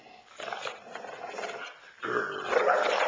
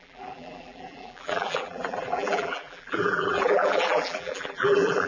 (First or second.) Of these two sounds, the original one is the first